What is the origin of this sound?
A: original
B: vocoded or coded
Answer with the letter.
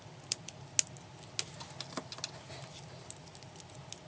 A